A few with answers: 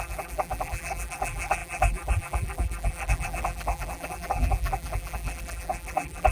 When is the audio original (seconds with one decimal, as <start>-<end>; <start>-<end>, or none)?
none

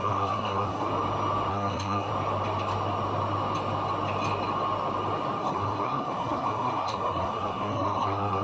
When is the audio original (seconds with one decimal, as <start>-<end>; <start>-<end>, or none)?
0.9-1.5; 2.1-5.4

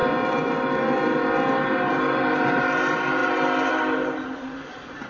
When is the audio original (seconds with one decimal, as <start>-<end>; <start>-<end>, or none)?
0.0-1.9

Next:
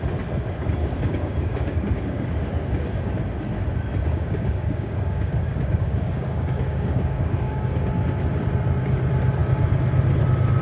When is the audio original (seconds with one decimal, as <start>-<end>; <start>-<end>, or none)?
0.0-0.8; 3.1-4.1; 7.9-10.6

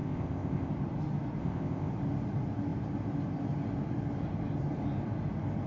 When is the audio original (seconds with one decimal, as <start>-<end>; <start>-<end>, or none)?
0.7-1.4; 1.9-5.7

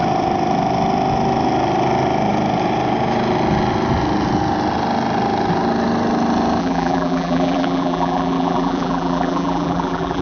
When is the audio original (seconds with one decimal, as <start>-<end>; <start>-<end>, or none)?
0.0-6.6